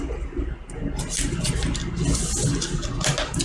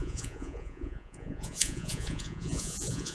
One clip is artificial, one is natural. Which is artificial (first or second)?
second